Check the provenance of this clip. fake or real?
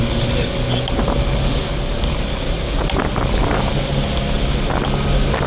real